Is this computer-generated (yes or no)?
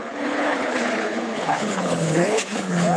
yes